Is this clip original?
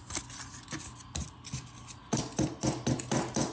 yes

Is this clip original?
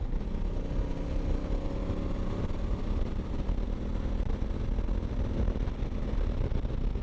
yes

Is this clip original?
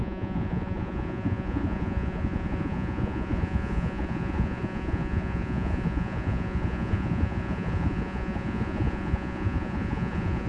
no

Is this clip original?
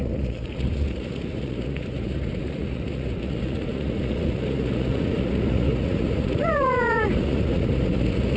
no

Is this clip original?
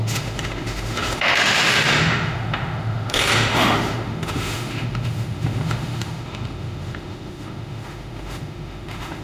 no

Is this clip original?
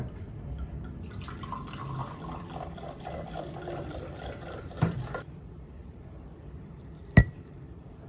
no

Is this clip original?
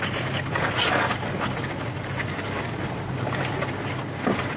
yes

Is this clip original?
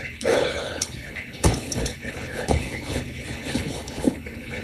no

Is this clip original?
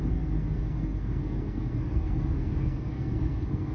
no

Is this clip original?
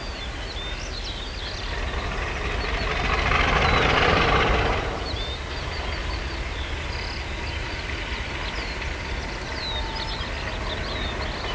yes